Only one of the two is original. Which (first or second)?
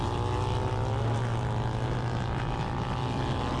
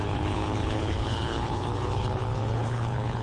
first